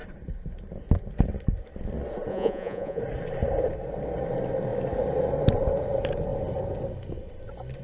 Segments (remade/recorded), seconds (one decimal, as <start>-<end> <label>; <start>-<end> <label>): 0.0-2.3 recorded; 2.3-3.0 remade; 3.0-7.8 recorded